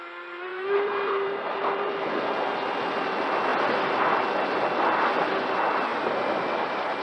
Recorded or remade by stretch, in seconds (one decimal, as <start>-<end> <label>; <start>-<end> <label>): 0.0-0.5 recorded; 0.5-2.2 remade; 2.2-5.9 recorded; 5.9-7.0 remade